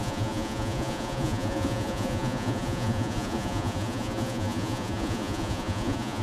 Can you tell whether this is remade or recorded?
remade